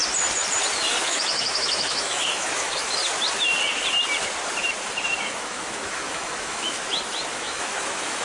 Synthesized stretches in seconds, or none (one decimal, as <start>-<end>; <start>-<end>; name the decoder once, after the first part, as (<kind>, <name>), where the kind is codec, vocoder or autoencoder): 1.0-3.0 (autoencoder, DAC-VAE); 5.2-6.8; 7.3-8.2